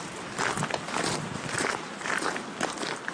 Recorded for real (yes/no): yes